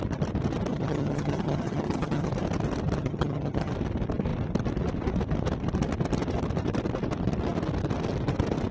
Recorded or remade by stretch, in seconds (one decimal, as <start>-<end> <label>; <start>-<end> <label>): 0.0-0.7 recorded; 0.7-2.3 remade; 2.3-3.0 recorded; 3.0-3.7 remade; 3.7-8.7 recorded